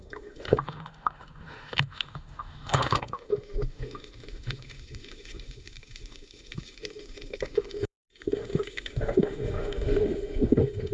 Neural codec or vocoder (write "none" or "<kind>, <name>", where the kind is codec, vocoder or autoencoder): autoencoder, DAC-VAE